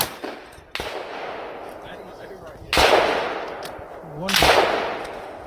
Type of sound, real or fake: real